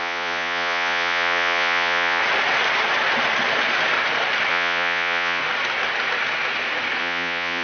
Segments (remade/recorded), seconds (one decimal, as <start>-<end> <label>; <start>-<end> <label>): 0.0-2.2 remade; 2.2-4.5 recorded; 4.5-5.4 remade; 5.4-7.0 recorded; 7.0-7.6 remade